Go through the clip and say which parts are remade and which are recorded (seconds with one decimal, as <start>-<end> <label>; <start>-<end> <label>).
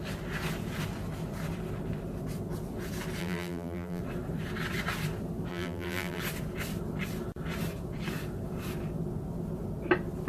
0.0-3.2 recorded; 3.2-4.0 remade; 4.0-5.5 recorded; 5.5-6.2 remade; 6.2-10.3 recorded